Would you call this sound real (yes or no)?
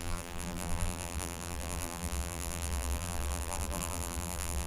no